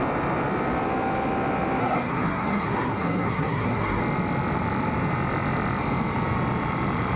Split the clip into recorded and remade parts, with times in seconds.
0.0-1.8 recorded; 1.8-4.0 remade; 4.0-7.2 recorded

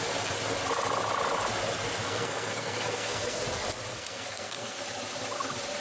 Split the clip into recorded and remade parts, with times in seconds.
0.0-2.0 recorded; 2.0-3.4 remade; 3.4-3.9 recorded; 3.9-4.8 remade; 4.8-5.8 recorded

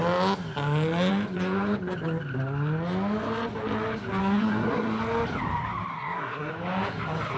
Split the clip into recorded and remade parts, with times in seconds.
0.0-4.2 recorded; 4.2-5.0 remade; 5.0-5.9 recorded; 5.9-6.5 remade; 6.5-7.4 recorded

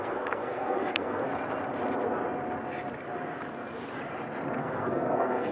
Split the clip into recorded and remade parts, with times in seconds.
0.0-1.3 remade; 1.3-4.6 recorded; 4.6-5.5 remade

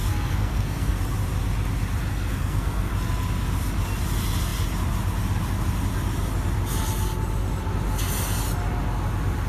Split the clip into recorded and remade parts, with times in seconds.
0.0-1.0 remade; 1.0-2.1 recorded; 2.1-2.9 remade; 2.9-9.5 recorded

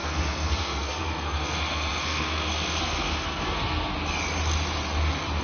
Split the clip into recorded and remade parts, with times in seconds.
0.0-3.9 remade; 3.9-5.4 recorded

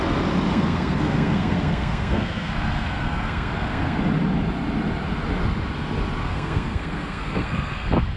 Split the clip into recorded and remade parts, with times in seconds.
0.0-0.5 recorded; 0.5-4.0 remade; 4.0-6.2 recorded; 6.2-8.2 remade